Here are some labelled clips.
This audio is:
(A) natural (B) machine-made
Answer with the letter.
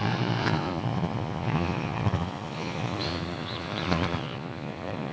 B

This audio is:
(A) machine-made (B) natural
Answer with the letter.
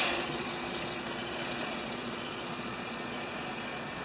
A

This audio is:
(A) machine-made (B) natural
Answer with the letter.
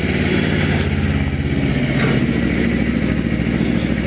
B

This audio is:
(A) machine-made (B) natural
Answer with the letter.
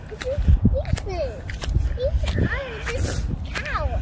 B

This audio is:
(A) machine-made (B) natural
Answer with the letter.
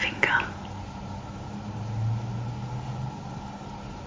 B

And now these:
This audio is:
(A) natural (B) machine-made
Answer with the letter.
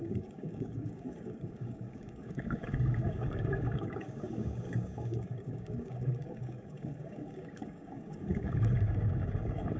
B